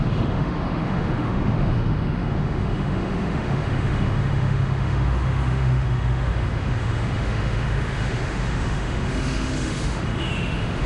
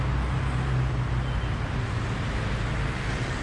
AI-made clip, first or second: first